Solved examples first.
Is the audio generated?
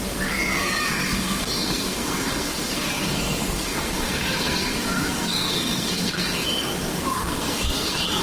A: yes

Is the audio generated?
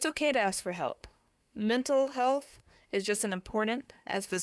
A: yes